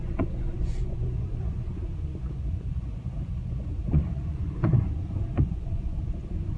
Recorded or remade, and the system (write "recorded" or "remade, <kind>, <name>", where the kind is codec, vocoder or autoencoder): remade, vocoder, Vocos